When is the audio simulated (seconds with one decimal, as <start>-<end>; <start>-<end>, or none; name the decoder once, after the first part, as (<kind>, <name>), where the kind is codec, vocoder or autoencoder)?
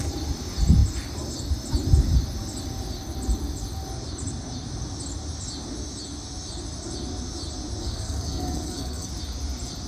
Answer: 7.8-9.1 (codec, SNAC)